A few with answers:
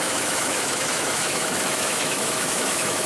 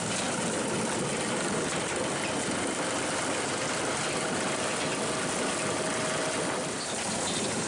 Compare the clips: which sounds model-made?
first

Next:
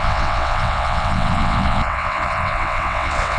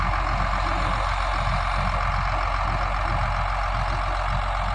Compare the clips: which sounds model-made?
first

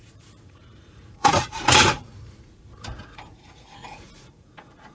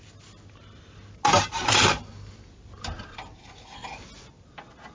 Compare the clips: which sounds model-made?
first